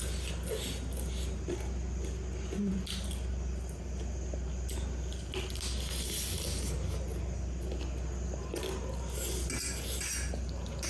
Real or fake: real